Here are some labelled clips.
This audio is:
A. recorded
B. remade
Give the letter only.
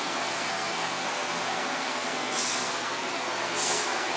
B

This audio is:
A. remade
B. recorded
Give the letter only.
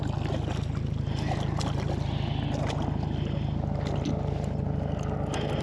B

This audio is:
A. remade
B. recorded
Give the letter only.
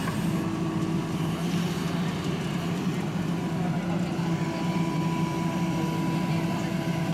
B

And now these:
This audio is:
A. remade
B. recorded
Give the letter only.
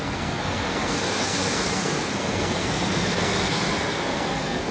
A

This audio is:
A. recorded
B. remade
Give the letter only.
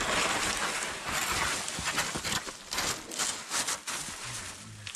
A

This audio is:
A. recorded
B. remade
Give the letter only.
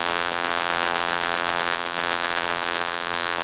B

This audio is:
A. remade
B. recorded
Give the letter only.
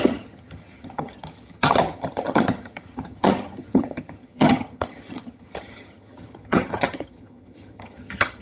A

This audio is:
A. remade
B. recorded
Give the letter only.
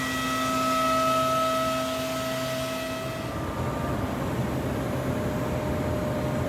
B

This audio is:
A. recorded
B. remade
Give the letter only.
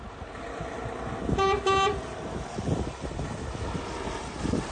A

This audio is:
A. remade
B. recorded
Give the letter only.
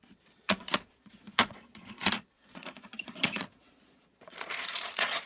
A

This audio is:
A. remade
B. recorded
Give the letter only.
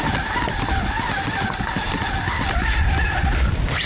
B